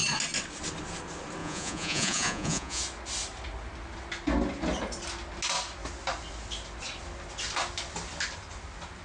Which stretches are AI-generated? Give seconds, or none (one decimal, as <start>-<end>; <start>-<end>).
1.4-2.8